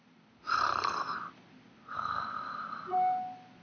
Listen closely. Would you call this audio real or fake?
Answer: real